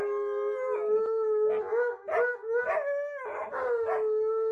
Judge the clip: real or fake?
real